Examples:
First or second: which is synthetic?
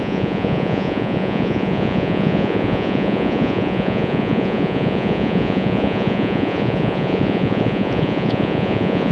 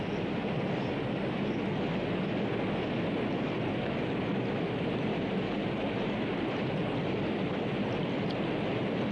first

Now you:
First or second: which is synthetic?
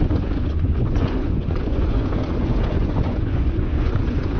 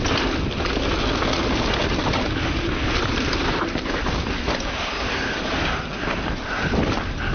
first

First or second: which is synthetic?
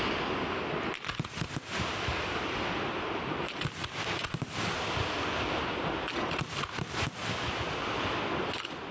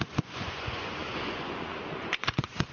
second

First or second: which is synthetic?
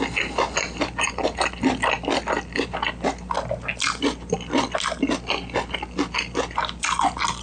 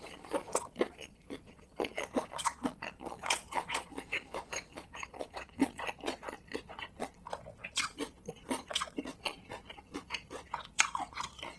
second